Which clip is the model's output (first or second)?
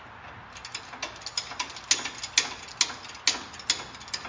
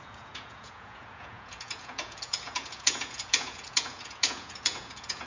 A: second